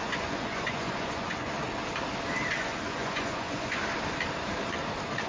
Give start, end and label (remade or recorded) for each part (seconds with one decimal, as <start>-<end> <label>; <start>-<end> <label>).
0.0-1.5 remade; 1.5-2.5 recorded; 2.5-3.8 remade; 3.8-5.3 recorded